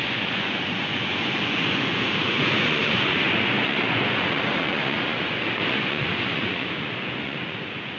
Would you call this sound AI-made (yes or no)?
yes